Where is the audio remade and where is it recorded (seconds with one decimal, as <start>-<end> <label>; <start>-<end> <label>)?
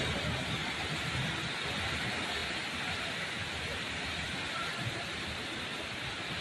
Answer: 0.0-0.6 recorded; 0.6-1.4 remade; 1.4-3.7 recorded; 3.7-4.7 remade; 4.7-6.4 recorded